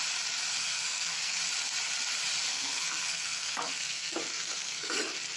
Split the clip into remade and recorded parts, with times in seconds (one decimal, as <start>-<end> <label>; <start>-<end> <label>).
0.0-0.6 recorded; 0.6-1.4 remade; 1.4-2.5 recorded; 2.5-5.0 remade; 5.0-5.4 recorded